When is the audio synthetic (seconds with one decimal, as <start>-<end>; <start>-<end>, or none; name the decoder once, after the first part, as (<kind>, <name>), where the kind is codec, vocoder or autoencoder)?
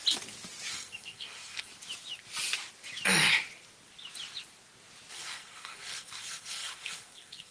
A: 0.7-1.7 (codec, SNAC); 5.1-7.5